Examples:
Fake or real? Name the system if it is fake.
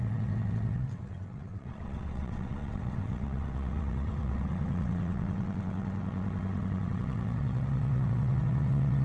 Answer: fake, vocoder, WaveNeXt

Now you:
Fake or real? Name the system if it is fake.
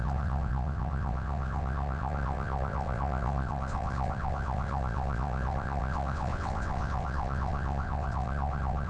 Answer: fake, vocoder, WaveNeXt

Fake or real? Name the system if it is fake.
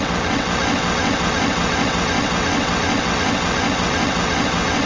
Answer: fake, vocoder, WaveNeXt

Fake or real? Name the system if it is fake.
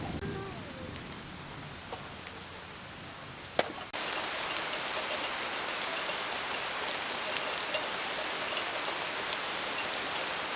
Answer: real